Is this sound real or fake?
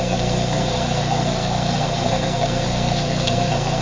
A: fake